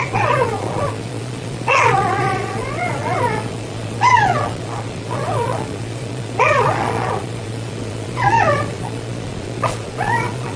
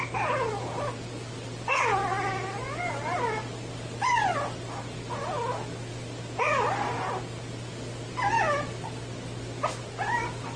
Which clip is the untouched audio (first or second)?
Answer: second